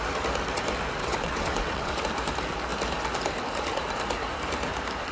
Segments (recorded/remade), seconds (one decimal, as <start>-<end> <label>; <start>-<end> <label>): 0.0-1.0 recorded; 1.0-2.0 remade; 2.0-5.1 recorded